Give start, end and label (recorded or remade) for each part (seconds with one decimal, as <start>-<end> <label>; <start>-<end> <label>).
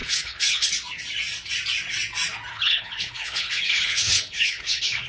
0.0-0.7 remade; 0.7-2.5 recorded; 2.5-5.1 remade